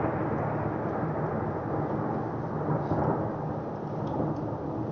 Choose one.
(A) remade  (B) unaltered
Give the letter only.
B